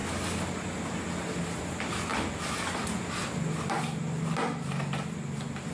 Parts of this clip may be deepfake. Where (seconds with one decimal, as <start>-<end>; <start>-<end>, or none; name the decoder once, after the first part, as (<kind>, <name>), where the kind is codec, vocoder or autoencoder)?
none